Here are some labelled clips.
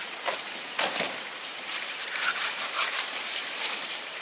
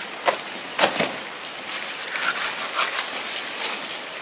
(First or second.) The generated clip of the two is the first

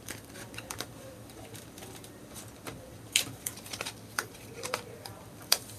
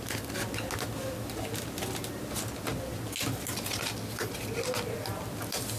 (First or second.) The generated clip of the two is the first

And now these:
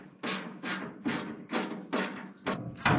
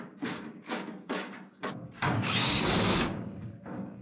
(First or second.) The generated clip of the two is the second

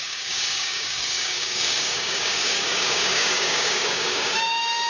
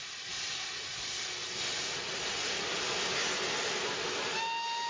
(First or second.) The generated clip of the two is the first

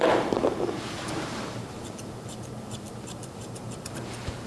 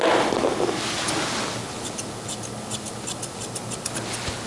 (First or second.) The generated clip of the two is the first